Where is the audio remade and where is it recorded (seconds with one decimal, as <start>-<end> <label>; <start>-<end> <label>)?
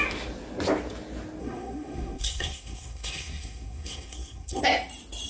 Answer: 0.0-1.4 recorded; 1.4-4.6 remade; 4.6-5.3 recorded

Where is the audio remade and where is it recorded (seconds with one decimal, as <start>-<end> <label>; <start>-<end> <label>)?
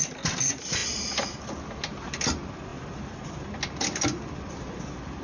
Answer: 0.0-5.2 recorded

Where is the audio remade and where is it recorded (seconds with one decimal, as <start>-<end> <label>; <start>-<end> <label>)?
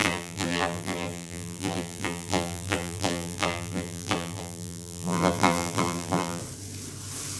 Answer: 0.0-6.4 remade; 6.4-7.4 recorded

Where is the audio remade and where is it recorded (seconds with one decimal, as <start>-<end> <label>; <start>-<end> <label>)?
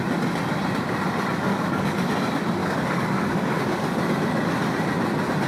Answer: 0.0-1.5 recorded; 1.5-2.1 remade; 2.1-2.6 recorded; 2.6-3.6 remade; 3.6-5.5 recorded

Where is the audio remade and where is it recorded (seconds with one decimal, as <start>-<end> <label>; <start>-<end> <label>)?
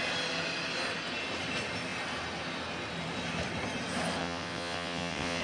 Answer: 0.0-4.2 recorded; 4.2-5.4 remade